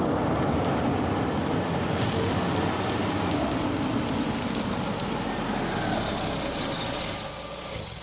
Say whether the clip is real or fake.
real